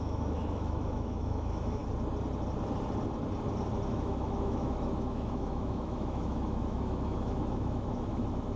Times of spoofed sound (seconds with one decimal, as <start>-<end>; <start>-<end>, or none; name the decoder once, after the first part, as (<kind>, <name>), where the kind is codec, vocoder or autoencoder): 0.0-1.8 (autoencoder, DAC-VAE); 3.9-8.6

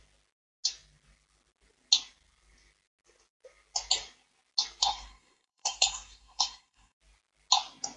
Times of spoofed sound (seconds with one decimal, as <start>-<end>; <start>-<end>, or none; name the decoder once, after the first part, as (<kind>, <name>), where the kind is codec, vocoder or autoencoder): 4.8-7.0 (codec, SNAC)

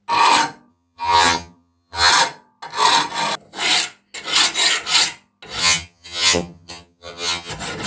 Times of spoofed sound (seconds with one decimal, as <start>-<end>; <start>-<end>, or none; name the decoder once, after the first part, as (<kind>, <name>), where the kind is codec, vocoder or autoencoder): 0.7-2.1 (vocoder, HiFi-GAN); 5.6-7.5

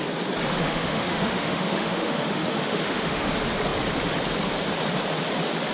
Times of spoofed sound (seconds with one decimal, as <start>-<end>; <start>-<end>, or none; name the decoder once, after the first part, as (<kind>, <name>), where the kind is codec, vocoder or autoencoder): 0.6-3.3 (autoencoder, DAC-VAE)

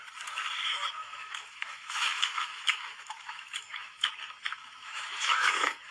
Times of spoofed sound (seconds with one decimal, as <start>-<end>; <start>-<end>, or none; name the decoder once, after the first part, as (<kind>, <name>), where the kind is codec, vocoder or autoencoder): 1.0-4.1 (autoencoder, DAC-VAE); 4.5-5.9

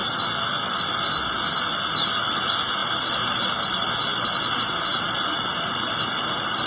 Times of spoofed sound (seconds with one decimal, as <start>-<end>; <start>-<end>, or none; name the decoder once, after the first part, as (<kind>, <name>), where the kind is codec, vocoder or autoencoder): none

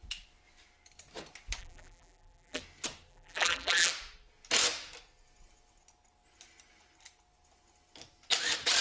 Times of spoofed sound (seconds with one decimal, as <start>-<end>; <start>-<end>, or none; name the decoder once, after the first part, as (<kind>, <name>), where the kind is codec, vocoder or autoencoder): 1.6-2.6 (vocoder, BigVGAN v2); 3.1-3.9